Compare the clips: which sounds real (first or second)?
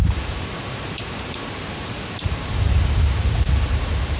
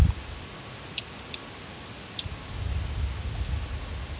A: second